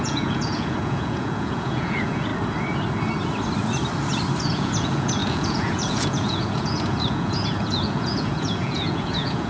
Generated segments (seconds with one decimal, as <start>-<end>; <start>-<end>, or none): 0.0-2.3; 4.4-9.5

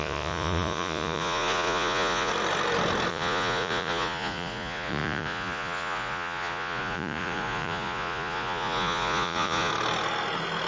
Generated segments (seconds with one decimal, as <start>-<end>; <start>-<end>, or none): 0.0-2.3; 3.1-9.7